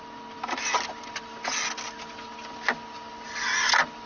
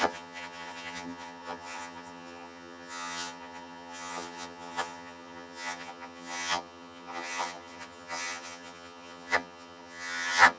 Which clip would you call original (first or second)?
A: first